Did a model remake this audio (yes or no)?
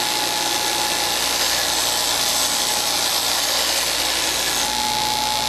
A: no